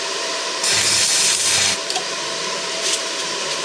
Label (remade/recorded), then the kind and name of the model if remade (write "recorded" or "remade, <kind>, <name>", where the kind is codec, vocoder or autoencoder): remade, vocoder, BigVGAN v2